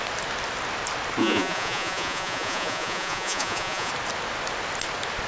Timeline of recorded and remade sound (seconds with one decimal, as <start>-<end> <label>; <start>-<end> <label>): 0.0-1.2 recorded; 1.2-3.9 remade; 3.9-5.3 recorded